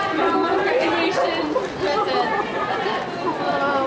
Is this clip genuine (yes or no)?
yes